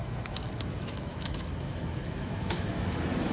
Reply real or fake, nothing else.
fake